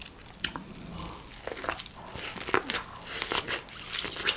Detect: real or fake real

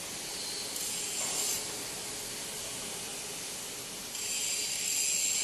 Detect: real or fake real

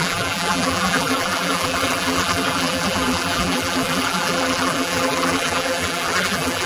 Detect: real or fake fake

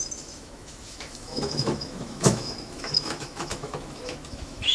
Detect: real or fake fake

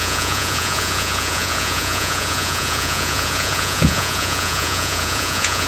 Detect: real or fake fake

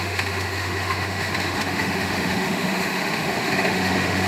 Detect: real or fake fake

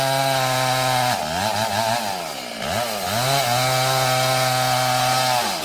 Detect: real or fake real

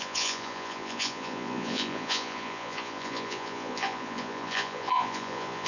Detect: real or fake fake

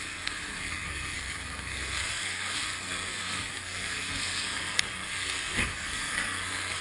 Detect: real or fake fake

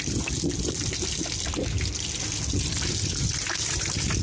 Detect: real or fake real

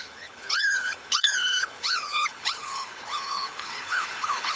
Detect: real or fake fake